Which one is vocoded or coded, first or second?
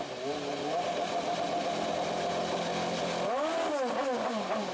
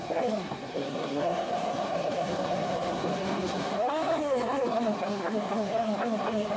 second